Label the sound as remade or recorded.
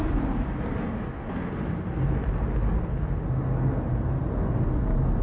recorded